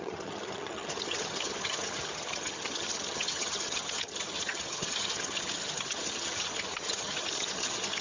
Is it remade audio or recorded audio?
remade